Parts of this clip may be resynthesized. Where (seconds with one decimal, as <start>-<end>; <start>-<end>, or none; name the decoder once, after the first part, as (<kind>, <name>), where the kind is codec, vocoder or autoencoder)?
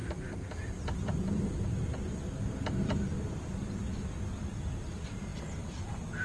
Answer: none